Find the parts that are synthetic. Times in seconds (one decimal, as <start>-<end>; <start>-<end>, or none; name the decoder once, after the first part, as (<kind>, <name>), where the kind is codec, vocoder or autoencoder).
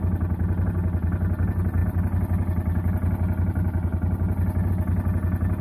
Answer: none